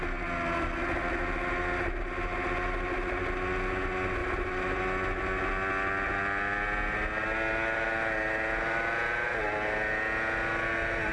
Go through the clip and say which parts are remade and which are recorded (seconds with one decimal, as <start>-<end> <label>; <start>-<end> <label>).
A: 0.0-4.2 recorded; 4.2-4.8 remade; 4.8-11.1 recorded